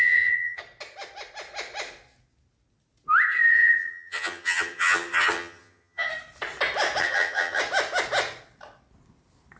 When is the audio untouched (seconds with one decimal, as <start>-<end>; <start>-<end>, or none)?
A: 0.6-3.5; 6.1-7.0; 7.6-9.6